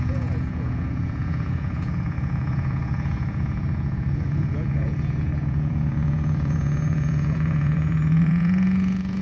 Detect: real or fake fake